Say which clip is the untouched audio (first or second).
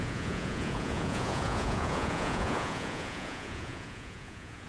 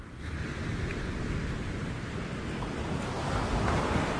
second